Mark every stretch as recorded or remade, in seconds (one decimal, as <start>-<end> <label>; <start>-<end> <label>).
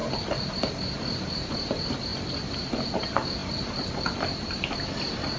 0.0-5.4 recorded